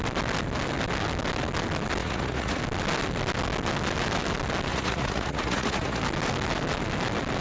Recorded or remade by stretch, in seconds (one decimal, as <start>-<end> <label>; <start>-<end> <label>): 0.0-2.0 recorded; 2.0-2.6 remade; 2.6-4.7 recorded; 4.7-6.0 remade; 6.0-7.4 recorded

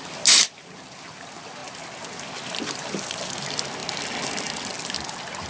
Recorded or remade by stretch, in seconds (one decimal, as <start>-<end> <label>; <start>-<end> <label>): 0.0-5.5 recorded

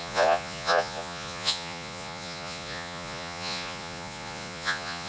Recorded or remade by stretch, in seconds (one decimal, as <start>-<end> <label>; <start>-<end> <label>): 0.0-5.1 remade

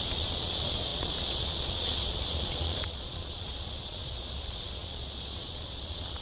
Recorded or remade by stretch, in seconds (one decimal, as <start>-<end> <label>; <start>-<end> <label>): 0.0-6.2 remade